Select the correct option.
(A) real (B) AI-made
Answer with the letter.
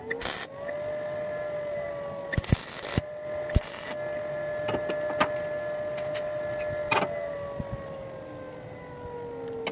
A